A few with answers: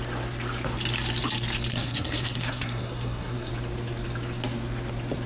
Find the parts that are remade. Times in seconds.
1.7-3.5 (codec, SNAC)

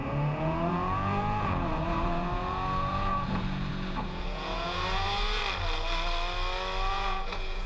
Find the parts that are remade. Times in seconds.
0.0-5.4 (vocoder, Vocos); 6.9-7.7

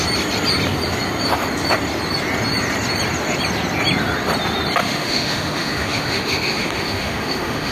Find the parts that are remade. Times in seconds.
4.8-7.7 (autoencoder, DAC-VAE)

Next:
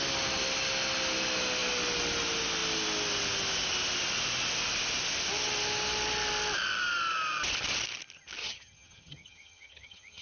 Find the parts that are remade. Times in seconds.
8.4-10.2 (vocoder, HiFi-GAN)